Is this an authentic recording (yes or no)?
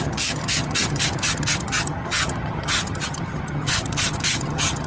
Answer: no